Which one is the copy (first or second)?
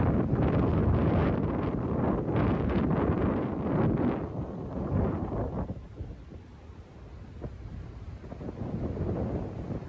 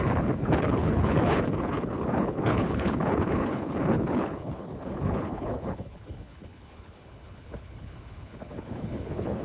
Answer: second